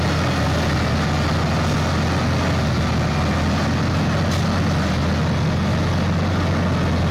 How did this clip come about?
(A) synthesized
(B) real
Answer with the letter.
B